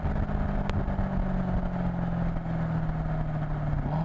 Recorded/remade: recorded